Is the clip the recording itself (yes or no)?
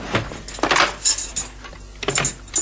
yes